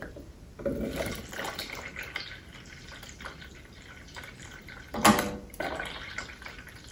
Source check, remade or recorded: recorded